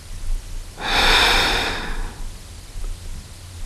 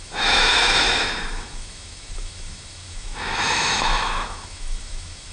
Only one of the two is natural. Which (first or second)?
first